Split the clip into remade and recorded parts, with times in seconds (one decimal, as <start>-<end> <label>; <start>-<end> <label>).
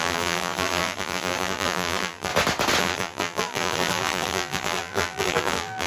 0.0-2.3 remade; 2.3-2.8 recorded; 2.8-5.9 remade